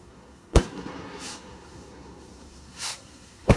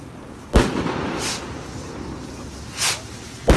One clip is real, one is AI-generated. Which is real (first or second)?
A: second